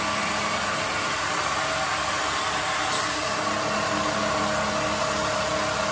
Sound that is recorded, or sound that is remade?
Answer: recorded